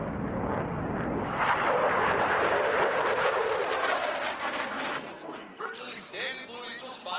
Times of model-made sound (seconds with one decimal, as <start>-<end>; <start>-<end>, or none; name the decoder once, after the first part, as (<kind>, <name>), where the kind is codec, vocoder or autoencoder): 4.9-6.1 (codec, SNAC)